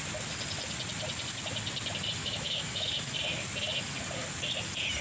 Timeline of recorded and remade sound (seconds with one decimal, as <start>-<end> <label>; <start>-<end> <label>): 0.0-2.2 recorded; 2.2-2.9 remade; 2.9-5.0 recorded